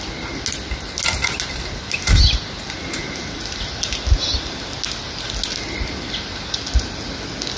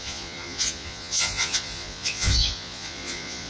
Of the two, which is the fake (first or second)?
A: second